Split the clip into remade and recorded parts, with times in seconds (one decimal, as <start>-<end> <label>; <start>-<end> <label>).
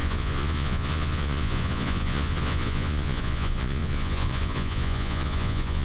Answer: 0.0-5.8 remade